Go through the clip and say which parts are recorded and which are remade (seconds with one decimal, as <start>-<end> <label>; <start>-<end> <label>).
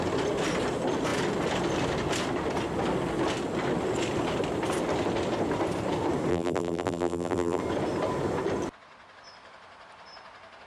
0.0-6.3 recorded; 6.3-7.6 remade; 7.6-10.7 recorded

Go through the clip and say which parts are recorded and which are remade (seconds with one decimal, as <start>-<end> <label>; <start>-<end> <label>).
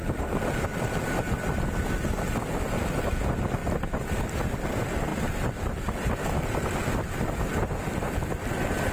0.0-0.8 remade; 0.8-3.6 recorded; 3.6-4.2 remade; 4.2-7.5 recorded; 7.5-8.9 remade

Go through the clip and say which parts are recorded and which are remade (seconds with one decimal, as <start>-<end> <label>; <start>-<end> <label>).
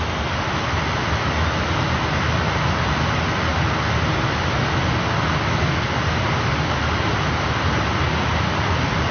0.0-3.5 remade; 3.5-4.1 recorded; 4.1-9.1 remade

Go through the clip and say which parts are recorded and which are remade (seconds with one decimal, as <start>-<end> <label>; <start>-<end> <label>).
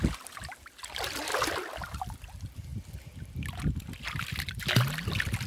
0.0-1.3 remade; 1.3-1.9 recorded; 1.9-2.7 remade; 2.7-5.5 recorded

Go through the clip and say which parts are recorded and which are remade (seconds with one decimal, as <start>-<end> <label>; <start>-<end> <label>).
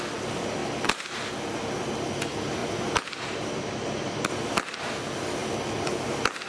0.0-2.6 recorded; 2.6-4.3 remade; 4.3-6.5 recorded